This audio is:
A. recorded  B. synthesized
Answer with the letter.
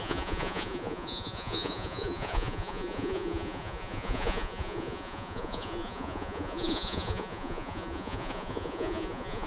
B